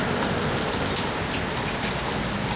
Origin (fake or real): real